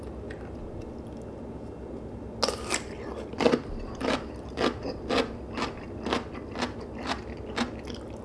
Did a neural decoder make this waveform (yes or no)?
no